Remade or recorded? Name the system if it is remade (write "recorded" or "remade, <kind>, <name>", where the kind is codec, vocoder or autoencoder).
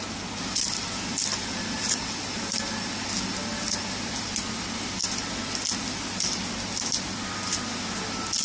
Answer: recorded